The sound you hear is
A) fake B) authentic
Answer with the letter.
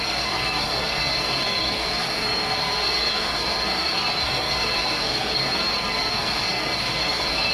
A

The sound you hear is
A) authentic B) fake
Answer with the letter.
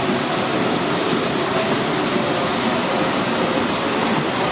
B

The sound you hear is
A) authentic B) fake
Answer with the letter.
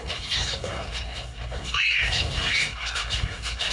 B